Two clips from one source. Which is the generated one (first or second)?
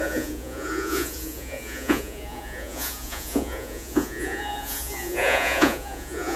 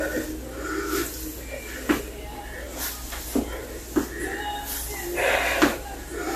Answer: first